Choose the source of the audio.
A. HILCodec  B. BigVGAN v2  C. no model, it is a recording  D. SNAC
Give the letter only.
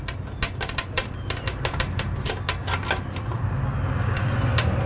C